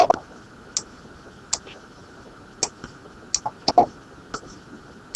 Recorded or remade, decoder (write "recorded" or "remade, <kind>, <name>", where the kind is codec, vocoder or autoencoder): recorded